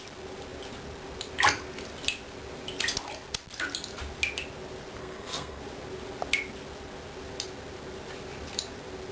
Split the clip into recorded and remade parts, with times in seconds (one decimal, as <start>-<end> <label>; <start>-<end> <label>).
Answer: 0.0-5.0 recorded; 5.0-5.6 remade; 5.6-9.1 recorded